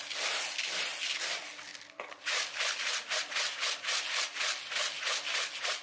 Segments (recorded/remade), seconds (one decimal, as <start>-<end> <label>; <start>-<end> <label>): 0.0-5.8 recorded